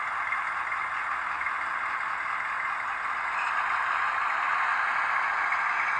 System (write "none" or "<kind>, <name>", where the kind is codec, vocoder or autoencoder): none